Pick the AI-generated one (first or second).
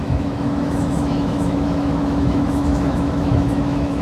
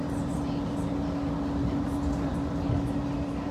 first